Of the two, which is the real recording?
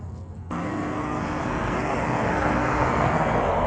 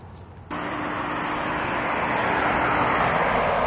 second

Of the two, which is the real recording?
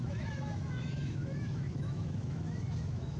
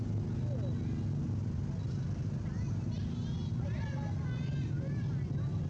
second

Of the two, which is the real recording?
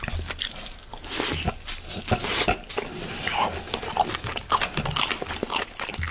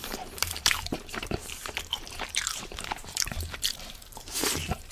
first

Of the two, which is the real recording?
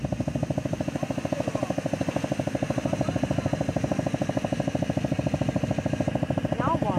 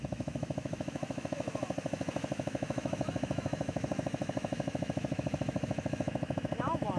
first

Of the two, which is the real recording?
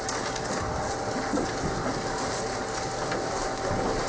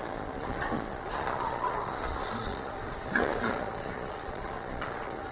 first